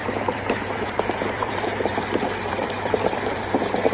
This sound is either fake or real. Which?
fake